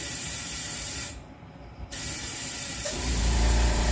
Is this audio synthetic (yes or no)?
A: yes